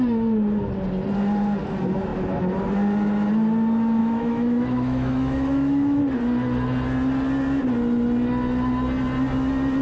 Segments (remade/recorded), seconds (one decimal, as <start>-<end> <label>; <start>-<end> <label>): 0.0-4.0 recorded; 4.0-6.0 remade; 6.0-9.8 recorded